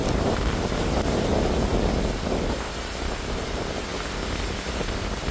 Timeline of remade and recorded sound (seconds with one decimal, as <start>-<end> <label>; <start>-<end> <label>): 0.0-1.0 recorded; 1.0-1.7 remade; 1.7-3.5 recorded; 3.5-5.3 remade